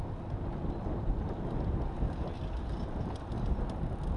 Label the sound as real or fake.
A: real